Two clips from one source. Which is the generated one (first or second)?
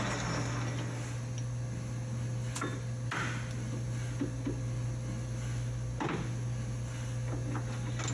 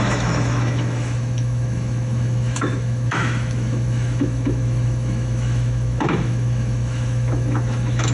second